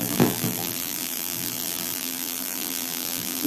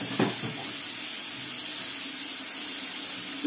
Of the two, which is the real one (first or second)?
second